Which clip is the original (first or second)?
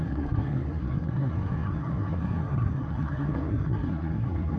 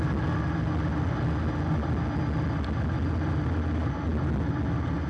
second